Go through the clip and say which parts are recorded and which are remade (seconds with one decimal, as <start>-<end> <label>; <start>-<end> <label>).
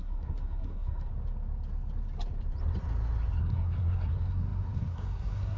0.0-1.1 remade; 1.1-3.4 recorded; 3.4-5.6 remade